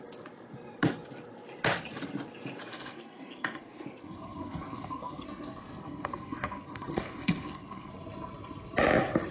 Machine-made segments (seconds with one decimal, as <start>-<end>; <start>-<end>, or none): 2.7-7.9